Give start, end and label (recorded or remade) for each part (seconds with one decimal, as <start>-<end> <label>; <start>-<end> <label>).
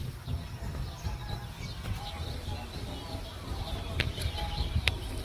0.0-5.2 recorded